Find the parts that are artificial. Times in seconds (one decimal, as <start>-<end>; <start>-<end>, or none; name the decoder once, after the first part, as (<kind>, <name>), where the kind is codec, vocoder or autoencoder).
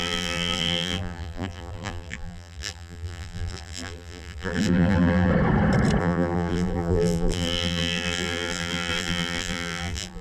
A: 0.0-5.3 (vocoder, BigVGAN v2); 6.0-10.2